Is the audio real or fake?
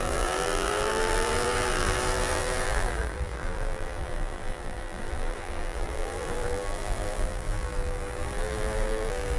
fake